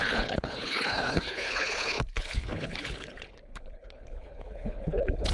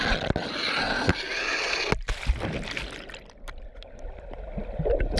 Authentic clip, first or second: second